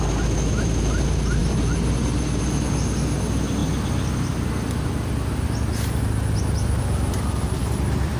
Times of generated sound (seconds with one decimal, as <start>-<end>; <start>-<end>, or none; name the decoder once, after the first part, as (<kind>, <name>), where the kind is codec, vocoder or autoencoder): 7.6-8.2 (vocoder, BigVGAN v2)